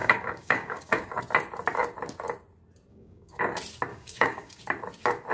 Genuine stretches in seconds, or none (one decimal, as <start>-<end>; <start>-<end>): 1.2-2.9; 3.4-3.9; 4.6-5.3

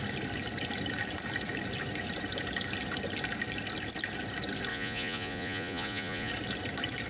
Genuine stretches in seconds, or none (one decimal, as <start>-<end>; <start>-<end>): 0.0-4.7; 6.3-7.1

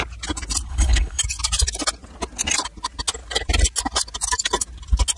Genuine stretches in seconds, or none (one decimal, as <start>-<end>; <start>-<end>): 0.0-0.7; 1.2-5.2

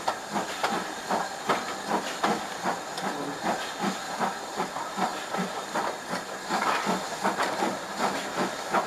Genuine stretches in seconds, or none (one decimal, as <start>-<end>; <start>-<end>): 0.0-5.1; 6.0-8.9

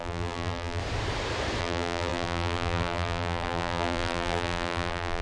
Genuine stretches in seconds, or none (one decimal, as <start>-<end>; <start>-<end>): 0.8-1.6

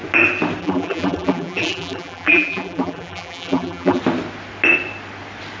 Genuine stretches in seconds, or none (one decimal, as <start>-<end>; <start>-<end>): 0.0-0.6; 4.0-5.6